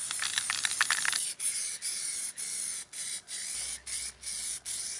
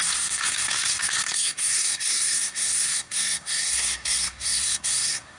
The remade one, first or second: second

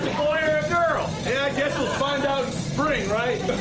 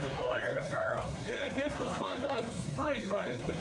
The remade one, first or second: second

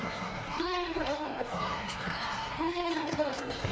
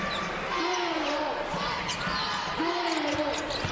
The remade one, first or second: first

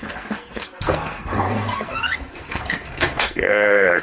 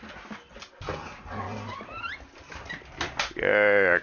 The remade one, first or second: first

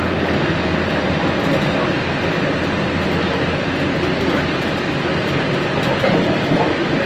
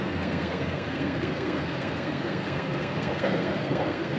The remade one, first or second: second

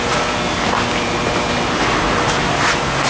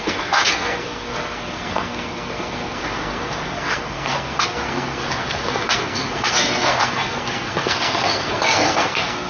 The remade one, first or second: second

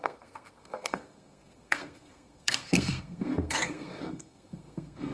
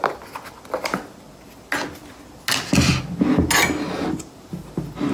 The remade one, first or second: first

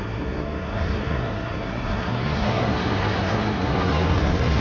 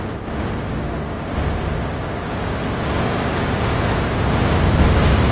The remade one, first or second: first